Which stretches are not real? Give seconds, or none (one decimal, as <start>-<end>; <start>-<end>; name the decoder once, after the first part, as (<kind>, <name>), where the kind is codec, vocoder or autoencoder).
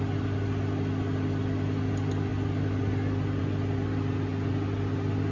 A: none